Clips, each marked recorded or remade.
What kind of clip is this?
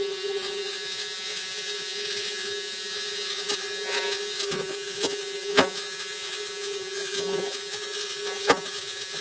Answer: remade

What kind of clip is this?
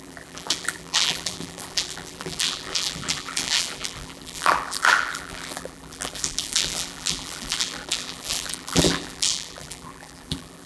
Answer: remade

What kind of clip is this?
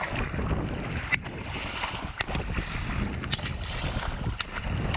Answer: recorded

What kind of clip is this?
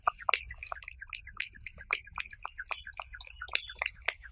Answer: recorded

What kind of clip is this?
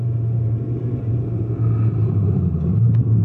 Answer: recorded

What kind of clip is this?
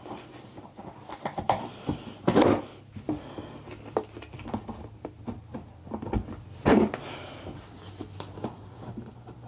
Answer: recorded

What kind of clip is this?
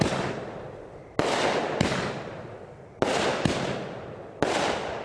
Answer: recorded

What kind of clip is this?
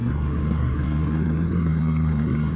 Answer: remade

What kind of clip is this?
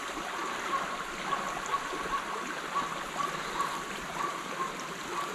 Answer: recorded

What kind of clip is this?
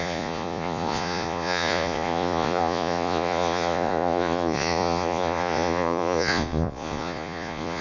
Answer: remade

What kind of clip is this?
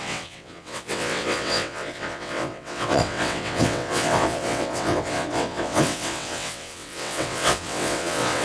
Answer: remade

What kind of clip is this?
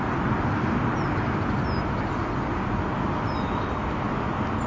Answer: recorded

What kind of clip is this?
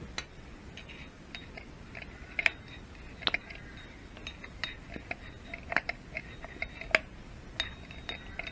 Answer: recorded